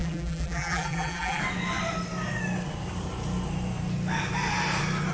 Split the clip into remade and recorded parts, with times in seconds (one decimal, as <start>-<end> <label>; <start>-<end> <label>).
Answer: 0.0-1.4 remade; 1.4-5.1 recorded